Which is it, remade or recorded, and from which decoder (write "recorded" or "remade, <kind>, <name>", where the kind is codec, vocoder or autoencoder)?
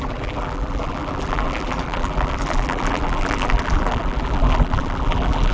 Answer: remade, vocoder, BigVGAN v2